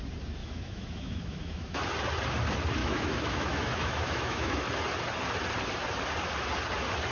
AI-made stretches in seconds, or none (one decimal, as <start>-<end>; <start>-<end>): 0.4-1.8; 2.8-4.6